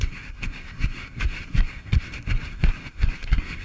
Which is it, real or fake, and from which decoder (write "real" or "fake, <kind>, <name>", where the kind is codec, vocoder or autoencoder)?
fake, codec, SNAC